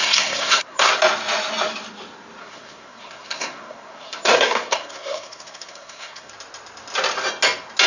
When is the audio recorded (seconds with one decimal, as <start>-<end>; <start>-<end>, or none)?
0.9-2.4; 6.3-7.9